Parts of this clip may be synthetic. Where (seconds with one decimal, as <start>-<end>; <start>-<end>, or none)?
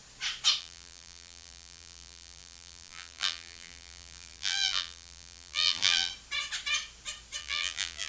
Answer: 0.6-6.1; 7.4-8.1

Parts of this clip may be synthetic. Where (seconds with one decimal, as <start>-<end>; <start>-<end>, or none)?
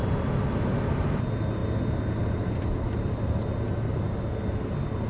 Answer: none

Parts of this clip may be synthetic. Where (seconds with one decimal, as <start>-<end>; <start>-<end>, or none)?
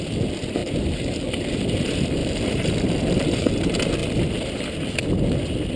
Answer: 0.6-1.6; 2.2-3.5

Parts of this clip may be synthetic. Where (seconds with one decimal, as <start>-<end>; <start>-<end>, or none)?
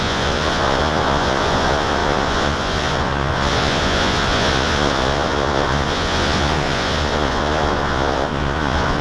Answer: 0.0-9.0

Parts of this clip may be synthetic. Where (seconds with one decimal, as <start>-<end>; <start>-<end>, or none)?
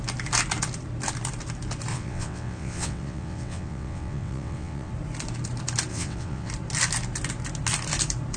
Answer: 1.9-4.9; 5.9-6.5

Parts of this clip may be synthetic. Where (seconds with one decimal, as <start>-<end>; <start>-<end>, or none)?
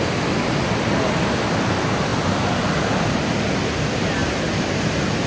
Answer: none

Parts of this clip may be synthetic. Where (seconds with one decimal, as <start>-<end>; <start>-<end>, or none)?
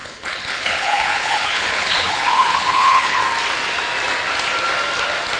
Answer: 0.0-3.2